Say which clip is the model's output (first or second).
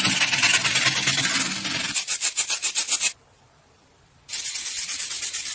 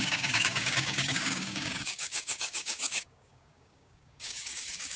second